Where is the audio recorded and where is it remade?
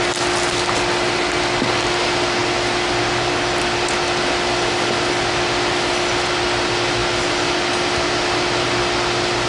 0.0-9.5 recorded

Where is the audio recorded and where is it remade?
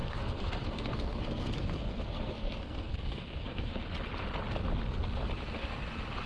0.0-3.8 remade; 3.8-6.3 recorded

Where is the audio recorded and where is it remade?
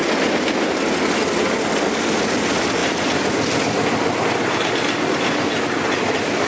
0.0-6.5 recorded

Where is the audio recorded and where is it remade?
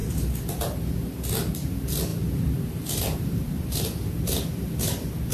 0.0-5.3 recorded